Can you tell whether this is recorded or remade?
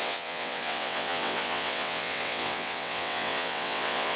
remade